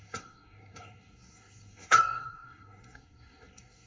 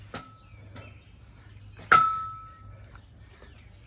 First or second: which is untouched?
second